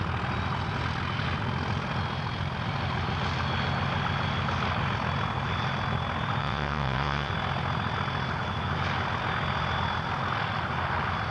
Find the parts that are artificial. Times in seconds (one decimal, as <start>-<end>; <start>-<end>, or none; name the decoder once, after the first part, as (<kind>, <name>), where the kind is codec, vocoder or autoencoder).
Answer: 6.4-7.3 (vocoder, WaveNeXt)

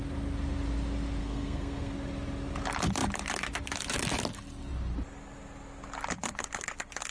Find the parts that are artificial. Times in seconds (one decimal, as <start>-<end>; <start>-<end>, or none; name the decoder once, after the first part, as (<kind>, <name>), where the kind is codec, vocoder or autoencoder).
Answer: 1.2-1.9 (codec, SNAC)

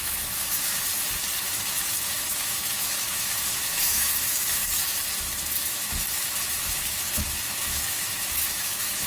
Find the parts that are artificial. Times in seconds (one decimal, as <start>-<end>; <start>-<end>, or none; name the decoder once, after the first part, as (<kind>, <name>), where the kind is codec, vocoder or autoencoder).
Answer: 0.0-0.9 (autoencoder, DAC-VAE); 1.5-4.6; 5.2-9.1

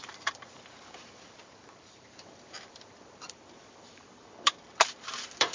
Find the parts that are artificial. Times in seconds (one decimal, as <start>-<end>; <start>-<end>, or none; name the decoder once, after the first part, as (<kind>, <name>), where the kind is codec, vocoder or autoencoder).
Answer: 0.0-5.5 (vocoder, BigVGAN v2)

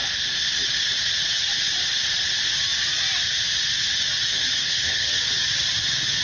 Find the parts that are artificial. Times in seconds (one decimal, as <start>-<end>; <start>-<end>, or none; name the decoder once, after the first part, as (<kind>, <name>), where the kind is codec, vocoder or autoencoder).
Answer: 4.3-5.1 (codec, HILCodec)

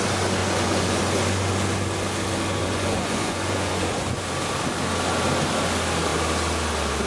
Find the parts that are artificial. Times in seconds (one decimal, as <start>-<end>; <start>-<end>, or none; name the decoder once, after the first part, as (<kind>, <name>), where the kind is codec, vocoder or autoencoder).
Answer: 0.4-1.0 (vocoder, Vocos); 2.6-4.2

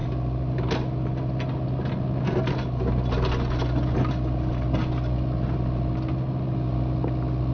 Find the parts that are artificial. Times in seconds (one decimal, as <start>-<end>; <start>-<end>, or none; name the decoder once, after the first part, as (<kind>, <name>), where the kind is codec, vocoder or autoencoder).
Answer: none

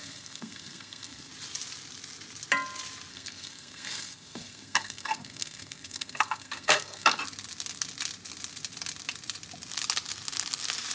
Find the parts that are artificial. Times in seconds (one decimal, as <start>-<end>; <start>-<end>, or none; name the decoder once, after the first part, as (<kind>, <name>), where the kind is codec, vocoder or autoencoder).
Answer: 0.0-1.3 (codec, SNAC); 3.1-7.2